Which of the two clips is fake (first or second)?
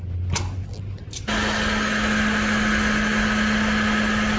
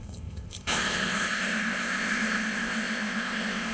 second